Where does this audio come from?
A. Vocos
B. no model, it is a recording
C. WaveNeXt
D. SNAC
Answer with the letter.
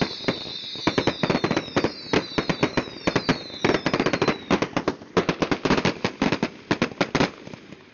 B